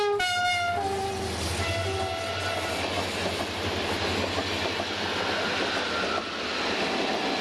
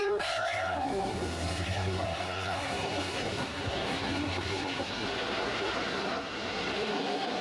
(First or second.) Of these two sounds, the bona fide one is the first